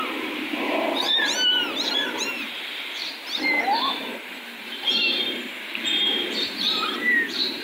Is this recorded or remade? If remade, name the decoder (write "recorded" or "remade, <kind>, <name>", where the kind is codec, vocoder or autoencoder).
remade, vocoder, BigVGAN v2